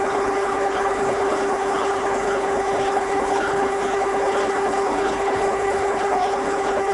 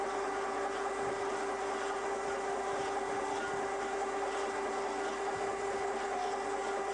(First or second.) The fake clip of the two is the first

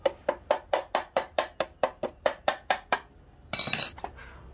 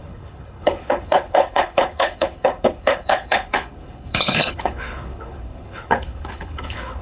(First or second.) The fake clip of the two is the second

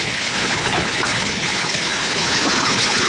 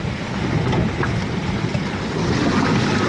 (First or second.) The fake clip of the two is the first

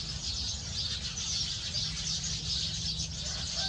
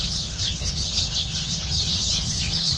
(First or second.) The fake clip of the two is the second